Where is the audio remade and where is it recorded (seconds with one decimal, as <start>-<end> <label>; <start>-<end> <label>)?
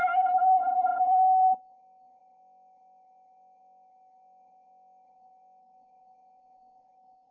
0.0-7.3 remade